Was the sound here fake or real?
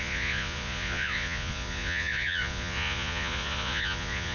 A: fake